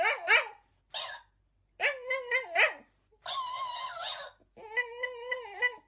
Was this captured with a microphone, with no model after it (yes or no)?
yes